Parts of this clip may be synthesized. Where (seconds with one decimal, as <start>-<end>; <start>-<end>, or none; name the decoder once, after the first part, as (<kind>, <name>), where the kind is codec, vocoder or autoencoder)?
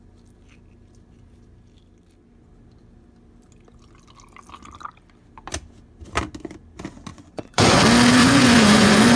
7.1-7.8 (vocoder, Vocos); 8.2-9.2